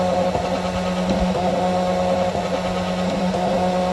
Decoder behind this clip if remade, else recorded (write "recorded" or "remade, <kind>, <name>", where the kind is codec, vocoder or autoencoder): recorded